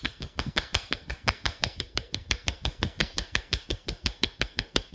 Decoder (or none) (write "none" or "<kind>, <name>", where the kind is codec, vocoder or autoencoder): codec, SNAC